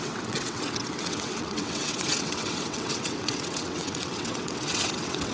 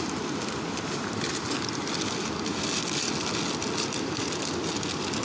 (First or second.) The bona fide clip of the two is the second